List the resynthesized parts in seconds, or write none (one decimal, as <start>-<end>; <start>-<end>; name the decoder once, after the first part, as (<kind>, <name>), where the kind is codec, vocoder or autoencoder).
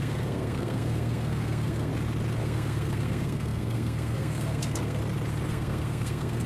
0.0-1.9 (codec, SNAC); 2.4-5.0; 5.5-6.5